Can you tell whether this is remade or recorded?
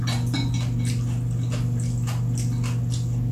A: recorded